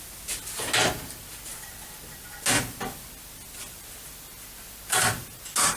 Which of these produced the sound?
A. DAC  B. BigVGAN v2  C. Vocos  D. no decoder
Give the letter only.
D